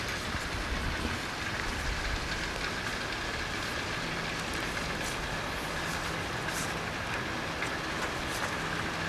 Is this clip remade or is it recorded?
recorded